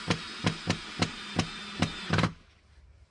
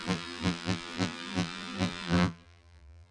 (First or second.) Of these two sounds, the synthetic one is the second